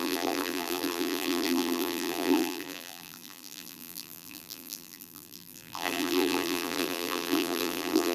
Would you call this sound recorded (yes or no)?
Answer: no